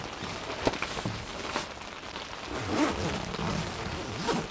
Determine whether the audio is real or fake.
real